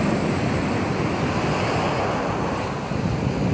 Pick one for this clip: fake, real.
real